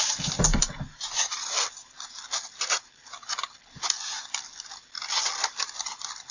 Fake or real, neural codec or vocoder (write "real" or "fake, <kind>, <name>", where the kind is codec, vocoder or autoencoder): real